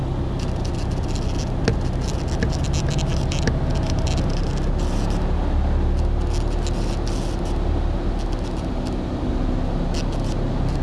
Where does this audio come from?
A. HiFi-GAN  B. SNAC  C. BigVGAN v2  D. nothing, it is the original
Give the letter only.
D